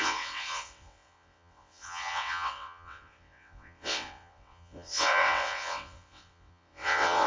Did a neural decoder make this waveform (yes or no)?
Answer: yes